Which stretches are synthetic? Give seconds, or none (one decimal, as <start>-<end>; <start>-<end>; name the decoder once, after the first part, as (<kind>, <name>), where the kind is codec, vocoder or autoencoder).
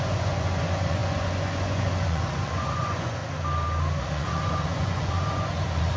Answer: 0.0-3.2 (vocoder, Vocos); 4.0-6.0